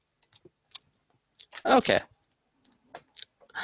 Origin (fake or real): real